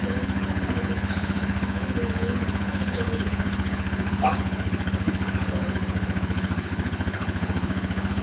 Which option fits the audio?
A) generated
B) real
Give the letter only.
A